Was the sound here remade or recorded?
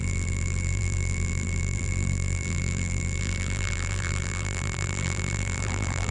remade